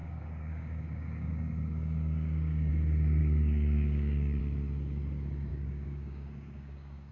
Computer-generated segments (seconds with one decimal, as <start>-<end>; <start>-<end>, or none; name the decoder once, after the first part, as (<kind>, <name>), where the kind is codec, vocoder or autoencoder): 0.0-2.7 (codec, DAC); 3.2-4.4; 5.5-7.1